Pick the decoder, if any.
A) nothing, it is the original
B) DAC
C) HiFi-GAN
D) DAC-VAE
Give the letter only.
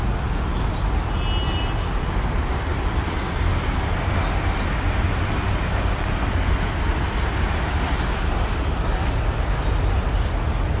A